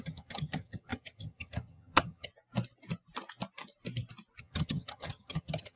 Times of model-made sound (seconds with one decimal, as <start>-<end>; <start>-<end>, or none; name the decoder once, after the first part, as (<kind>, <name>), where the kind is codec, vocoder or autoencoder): 0.0-2.3 (vocoder, HiFi-GAN); 4.4-5.8